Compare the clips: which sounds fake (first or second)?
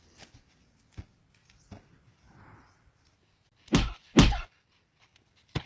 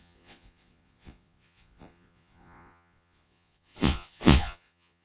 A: second